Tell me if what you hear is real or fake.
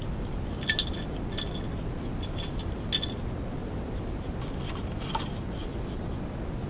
real